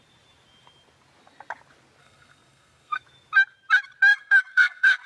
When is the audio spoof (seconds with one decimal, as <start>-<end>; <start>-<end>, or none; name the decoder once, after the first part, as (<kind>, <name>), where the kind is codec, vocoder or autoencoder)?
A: 2.0-3.0 (codec, SNAC); 4.1-5.1